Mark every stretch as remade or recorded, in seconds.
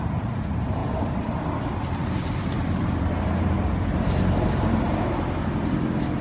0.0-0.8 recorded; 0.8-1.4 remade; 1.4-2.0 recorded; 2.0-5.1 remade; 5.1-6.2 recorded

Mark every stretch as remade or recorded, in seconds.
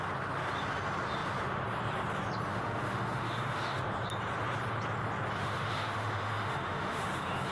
0.0-2.5 recorded; 2.5-3.8 remade; 3.8-5.4 recorded; 5.4-7.5 remade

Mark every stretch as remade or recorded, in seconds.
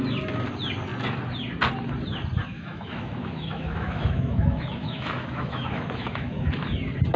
0.0-2.5 recorded; 2.5-6.5 remade; 6.5-7.2 recorded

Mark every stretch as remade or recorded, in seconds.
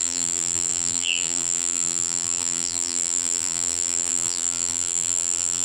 0.0-5.6 remade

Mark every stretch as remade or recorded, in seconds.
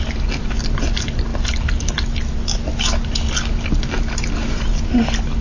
0.0-5.4 recorded